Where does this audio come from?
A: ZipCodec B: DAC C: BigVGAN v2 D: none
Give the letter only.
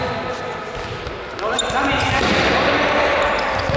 D